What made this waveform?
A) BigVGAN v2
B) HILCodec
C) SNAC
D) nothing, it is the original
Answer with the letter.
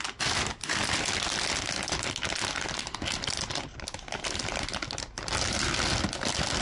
D